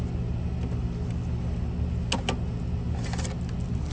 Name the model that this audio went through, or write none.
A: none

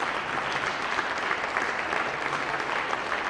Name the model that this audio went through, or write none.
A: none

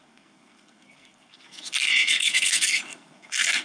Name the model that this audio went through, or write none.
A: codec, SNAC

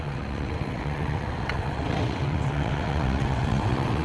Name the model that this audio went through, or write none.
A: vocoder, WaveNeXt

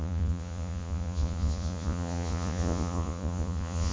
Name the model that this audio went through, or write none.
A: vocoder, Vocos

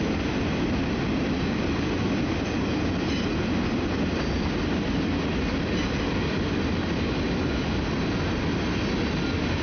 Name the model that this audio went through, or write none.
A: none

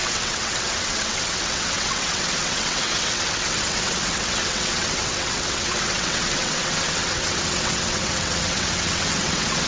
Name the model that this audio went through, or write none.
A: vocoder, WaveNeXt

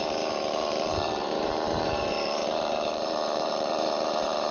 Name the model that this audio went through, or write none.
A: vocoder, BigVGAN v2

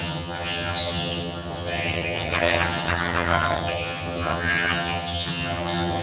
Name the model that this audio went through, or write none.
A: vocoder, HiFi-GAN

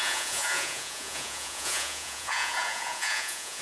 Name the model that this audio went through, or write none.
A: vocoder, Vocos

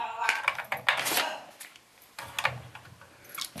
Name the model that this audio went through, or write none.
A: none